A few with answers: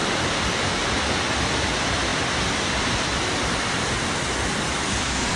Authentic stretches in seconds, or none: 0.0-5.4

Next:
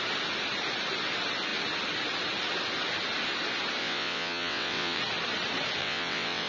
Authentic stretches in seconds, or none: 0.0-3.8; 5.0-5.8

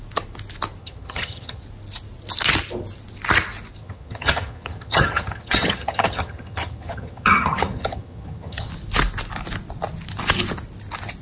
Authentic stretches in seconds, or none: 0.0-0.8; 1.6-3.8; 8.7-11.2

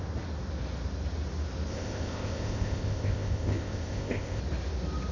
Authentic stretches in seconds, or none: 0.0-1.7; 4.4-5.1

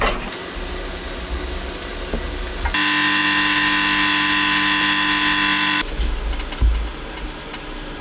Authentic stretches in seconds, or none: 0.0-8.0

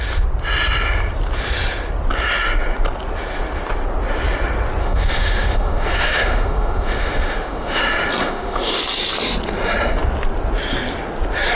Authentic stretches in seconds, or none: 0.0-4.8; 7.8-8.2; 8.8-11.6

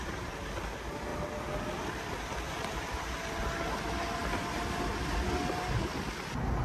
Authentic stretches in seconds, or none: 0.0-6.6

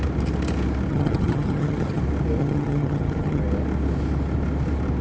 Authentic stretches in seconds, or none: 0.0-0.9; 2.0-2.4; 3.4-5.0